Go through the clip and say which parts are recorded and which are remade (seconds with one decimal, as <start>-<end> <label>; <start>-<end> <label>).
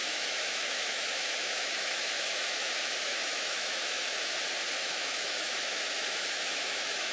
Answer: 0.0-4.3 remade; 4.3-4.8 recorded; 4.8-7.1 remade